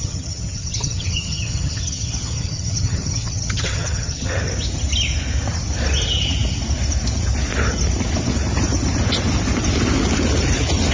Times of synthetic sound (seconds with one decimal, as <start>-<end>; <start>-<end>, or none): 0.0-4.4